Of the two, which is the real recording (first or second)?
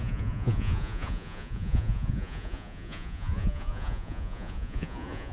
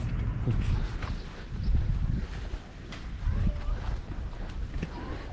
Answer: second